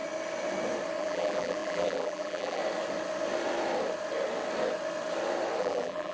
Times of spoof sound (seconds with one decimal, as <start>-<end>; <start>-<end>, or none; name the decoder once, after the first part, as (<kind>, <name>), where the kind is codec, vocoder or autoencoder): 1.0-2.6 (vocoder, BigVGAN v2); 5.6-6.1